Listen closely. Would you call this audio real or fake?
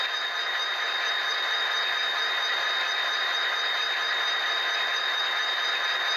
real